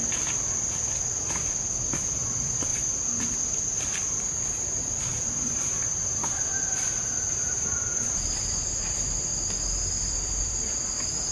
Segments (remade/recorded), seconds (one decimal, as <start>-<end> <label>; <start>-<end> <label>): 0.0-0.9 recorded; 0.9-9.3 remade; 9.3-10.0 recorded; 10.0-11.3 remade